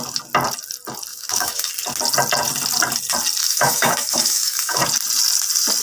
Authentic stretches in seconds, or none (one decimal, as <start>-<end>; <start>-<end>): 0.0-1.1; 1.7-3.4; 4.8-5.8